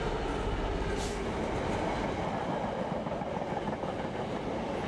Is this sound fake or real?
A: real